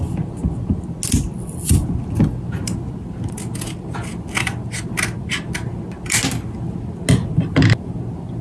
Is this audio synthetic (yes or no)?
no